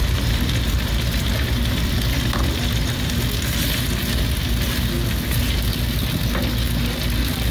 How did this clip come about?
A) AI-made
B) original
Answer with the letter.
B